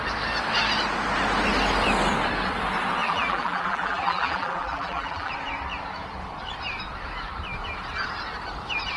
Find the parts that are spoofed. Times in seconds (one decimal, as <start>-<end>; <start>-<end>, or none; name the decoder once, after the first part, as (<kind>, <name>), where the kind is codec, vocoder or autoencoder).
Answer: 3.0-5.3 (vocoder, BigVGAN v2)